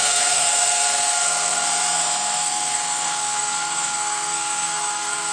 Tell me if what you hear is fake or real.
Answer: fake